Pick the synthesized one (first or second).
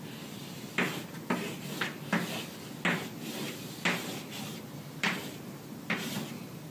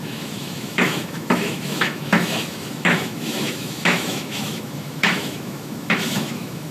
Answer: second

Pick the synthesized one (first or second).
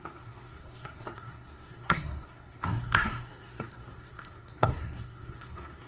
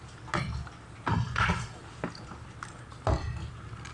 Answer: first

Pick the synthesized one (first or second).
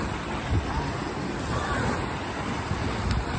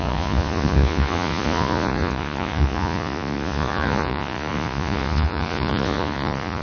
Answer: second